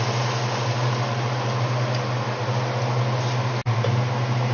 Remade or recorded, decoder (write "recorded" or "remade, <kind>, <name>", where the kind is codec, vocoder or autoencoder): recorded